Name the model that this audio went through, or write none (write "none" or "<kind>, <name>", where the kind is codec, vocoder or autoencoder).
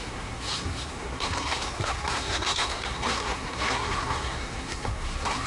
codec, SNAC